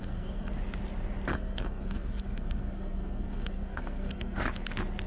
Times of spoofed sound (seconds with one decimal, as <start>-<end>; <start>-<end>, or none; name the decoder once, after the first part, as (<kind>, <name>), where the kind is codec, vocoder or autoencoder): 0.0-0.5 (codec, SNAC); 1.3-4.4